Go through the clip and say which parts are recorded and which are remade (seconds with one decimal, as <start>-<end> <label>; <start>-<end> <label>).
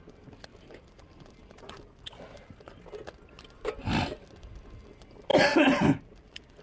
0.0-6.6 recorded